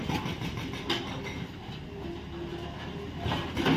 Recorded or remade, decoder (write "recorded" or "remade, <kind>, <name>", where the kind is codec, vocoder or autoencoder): recorded